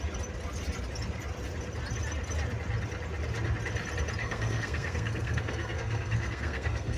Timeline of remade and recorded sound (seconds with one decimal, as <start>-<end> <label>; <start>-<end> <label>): 0.0-4.2 recorded; 4.2-7.0 remade